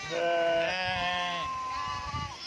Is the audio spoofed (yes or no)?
yes